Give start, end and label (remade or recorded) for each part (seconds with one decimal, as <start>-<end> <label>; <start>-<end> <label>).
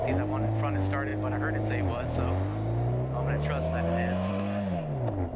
0.0-5.4 recorded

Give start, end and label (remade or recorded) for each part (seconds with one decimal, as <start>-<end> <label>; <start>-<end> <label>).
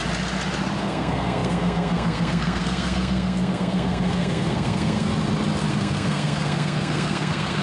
0.0-0.8 recorded; 0.8-5.1 remade; 5.1-5.7 recorded; 5.7-7.6 remade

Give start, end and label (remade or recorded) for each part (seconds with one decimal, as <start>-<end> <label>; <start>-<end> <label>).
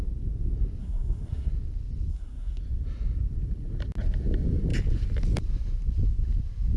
0.0-0.8 recorded; 0.8-1.5 remade; 1.5-2.1 recorded; 2.1-2.6 remade; 2.6-6.8 recorded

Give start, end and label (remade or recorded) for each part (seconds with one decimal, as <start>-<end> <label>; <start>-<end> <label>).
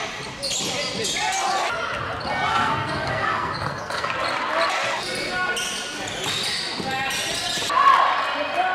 0.0-2.5 recorded; 2.5-4.2 remade; 4.2-8.7 recorded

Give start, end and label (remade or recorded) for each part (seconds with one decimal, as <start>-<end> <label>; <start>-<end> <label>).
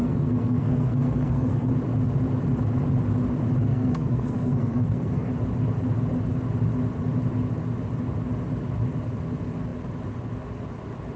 0.0-1.7 remade; 1.7-3.7 recorded; 3.7-5.3 remade; 5.3-11.2 recorded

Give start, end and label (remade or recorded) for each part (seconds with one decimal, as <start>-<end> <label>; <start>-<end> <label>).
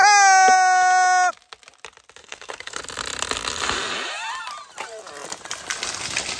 0.0-2.2 recorded; 2.2-2.8 remade; 2.8-6.4 recorded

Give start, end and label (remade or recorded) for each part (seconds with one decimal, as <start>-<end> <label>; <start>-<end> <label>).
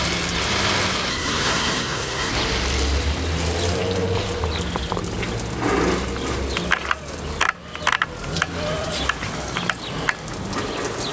0.0-1.1 recorded; 1.1-2.3 remade; 2.3-11.1 recorded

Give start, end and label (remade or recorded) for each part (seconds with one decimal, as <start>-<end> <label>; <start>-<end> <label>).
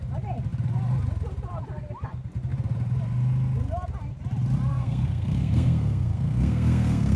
0.0-4.7 recorded; 4.7-7.2 remade